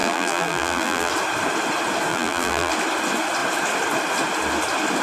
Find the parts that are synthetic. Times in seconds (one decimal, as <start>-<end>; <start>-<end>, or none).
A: 0.0-1.1; 2.1-2.7